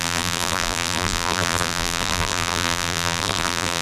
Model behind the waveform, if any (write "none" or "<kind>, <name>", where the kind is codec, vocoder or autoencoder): vocoder, BigVGAN v2